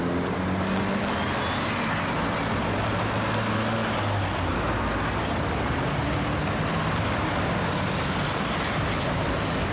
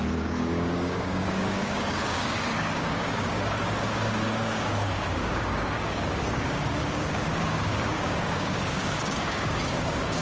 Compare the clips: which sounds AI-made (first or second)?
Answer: second